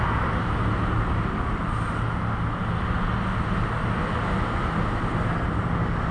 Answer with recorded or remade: recorded